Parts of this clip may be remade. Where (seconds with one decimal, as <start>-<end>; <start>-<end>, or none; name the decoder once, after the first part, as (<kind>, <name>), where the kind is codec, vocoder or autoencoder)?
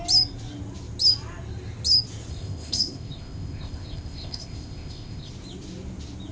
2.3-5.3 (codec, ZipCodec)